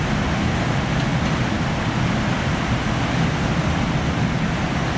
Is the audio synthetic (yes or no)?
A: no